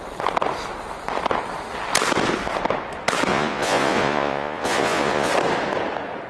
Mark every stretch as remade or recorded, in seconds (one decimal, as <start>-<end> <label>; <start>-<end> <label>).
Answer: 0.0-3.3 recorded; 3.3-5.3 remade; 5.3-6.3 recorded